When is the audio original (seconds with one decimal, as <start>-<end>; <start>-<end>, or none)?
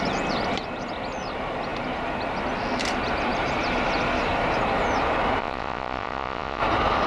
0.0-5.4; 6.6-7.1